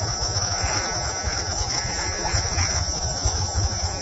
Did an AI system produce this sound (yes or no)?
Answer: yes